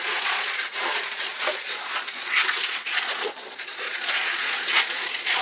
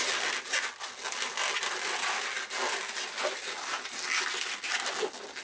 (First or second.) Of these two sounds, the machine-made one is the first